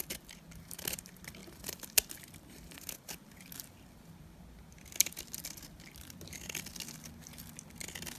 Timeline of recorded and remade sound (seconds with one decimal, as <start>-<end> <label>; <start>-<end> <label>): 0.0-8.2 recorded